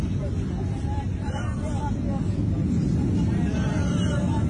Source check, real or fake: real